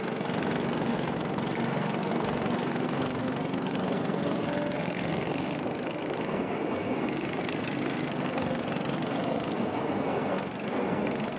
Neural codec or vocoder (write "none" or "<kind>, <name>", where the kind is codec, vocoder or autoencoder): codec, SNAC